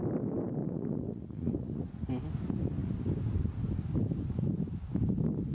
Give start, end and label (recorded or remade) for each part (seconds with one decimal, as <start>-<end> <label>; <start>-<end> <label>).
0.0-0.6 recorded; 0.6-2.1 remade; 2.1-5.5 recorded

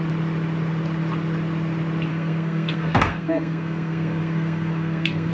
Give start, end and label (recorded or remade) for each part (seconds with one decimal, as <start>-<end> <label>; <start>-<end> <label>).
0.0-2.1 recorded; 2.1-5.3 remade